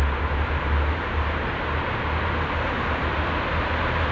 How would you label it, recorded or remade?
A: recorded